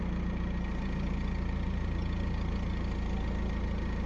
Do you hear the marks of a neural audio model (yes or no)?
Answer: no